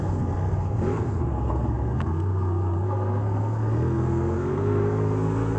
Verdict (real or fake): fake